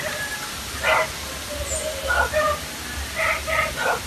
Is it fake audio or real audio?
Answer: real